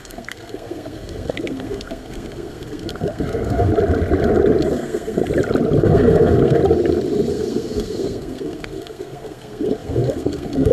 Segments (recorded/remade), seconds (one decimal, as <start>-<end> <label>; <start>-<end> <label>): 0.0-3.7 remade; 3.7-4.7 recorded; 4.7-5.2 remade; 5.2-5.8 recorded; 5.8-6.6 remade; 6.6-7.3 recorded; 7.3-10.7 remade

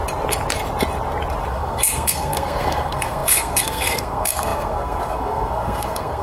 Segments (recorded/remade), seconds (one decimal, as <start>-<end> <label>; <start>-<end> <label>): 0.0-1.5 recorded; 1.5-6.2 remade